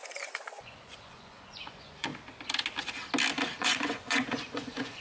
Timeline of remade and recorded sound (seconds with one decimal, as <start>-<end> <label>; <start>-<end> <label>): 0.0-2.1 remade; 2.1-3.6 recorded; 3.6-5.0 remade